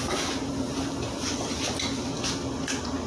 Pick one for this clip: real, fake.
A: real